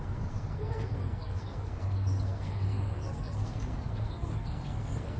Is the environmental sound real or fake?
fake